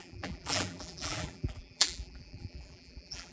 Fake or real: fake